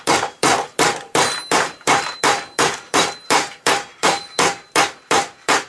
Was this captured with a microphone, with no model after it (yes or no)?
no